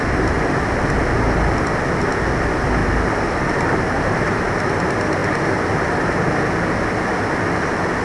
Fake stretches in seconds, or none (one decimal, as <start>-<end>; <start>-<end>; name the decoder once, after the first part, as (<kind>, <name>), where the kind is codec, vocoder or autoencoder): 2.8-4.7 (vocoder, BigVGAN v2)